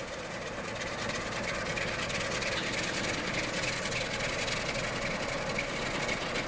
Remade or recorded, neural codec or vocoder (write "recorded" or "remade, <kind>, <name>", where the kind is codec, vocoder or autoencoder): recorded